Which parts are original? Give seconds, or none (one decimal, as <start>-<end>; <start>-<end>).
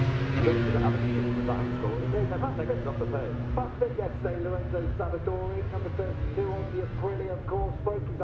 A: 0.0-8.2